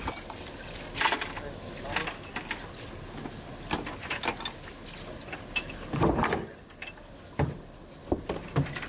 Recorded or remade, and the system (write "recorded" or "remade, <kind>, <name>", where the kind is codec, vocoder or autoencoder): recorded